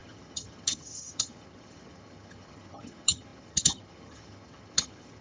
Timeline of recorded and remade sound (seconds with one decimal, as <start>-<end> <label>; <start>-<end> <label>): 0.0-5.2 remade